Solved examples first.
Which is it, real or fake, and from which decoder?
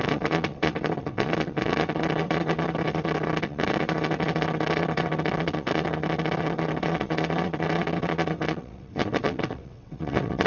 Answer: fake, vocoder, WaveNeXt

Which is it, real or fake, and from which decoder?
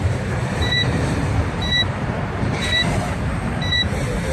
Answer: fake, vocoder, BigVGAN v2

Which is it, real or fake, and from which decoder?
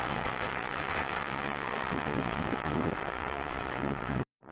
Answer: fake, vocoder, WaveNeXt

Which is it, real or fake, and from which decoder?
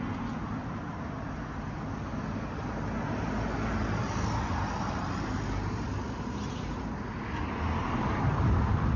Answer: real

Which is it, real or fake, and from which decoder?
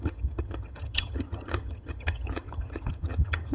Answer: fake, vocoder, HiFi-GAN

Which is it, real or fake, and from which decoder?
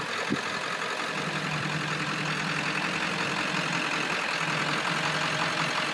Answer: real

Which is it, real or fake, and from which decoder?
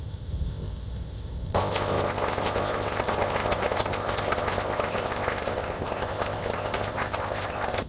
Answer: fake, codec, ZipCodec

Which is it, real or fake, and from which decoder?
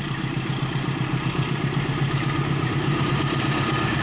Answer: fake, vocoder, BigVGAN v2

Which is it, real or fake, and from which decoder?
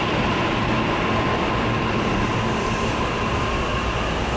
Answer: real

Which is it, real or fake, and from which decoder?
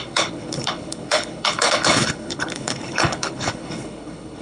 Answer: fake, codec, HILCodec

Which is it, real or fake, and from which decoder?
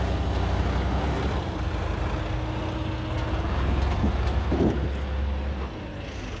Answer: real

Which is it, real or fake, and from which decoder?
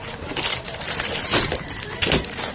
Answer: real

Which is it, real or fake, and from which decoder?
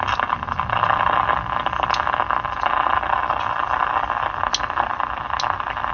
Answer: real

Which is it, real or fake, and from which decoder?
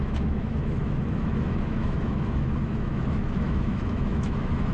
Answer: fake, autoencoder, DAC-VAE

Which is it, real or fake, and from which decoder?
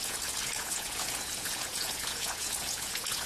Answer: fake, vocoder, Vocos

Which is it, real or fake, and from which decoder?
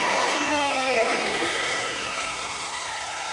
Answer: fake, codec, SNAC